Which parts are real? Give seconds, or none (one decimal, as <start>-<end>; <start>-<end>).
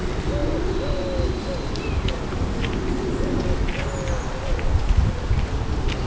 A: 0.0-6.1